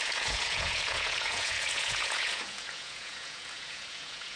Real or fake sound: fake